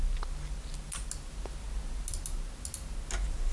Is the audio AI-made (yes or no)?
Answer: no